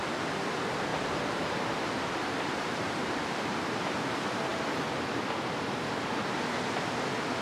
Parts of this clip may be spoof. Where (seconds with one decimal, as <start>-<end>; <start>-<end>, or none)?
0.9-4.0